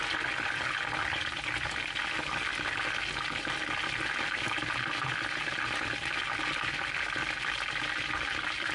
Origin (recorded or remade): recorded